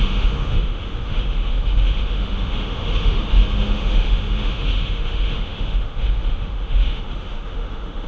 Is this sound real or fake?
fake